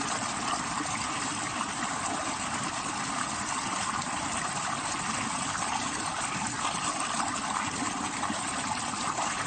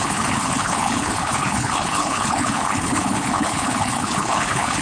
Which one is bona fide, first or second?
first